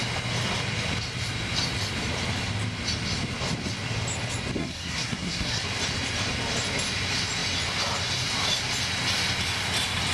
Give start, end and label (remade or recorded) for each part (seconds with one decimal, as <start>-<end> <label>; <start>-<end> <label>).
0.0-4.6 recorded; 4.6-5.6 remade; 5.6-10.1 recorded